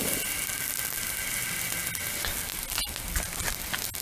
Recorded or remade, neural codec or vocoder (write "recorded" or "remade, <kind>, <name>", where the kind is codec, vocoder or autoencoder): recorded